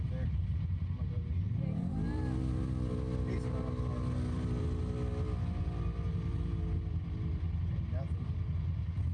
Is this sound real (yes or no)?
yes